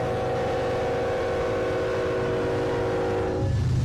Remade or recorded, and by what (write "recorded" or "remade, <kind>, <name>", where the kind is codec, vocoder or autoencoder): remade, vocoder, BigVGAN v2